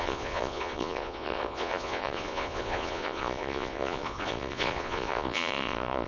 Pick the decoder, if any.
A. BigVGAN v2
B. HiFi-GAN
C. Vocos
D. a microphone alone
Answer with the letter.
C